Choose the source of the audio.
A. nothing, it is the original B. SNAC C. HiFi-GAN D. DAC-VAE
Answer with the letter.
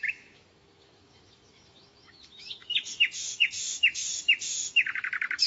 D